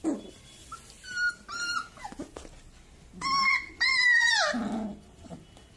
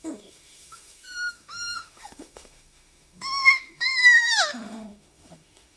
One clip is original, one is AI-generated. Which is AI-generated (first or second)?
second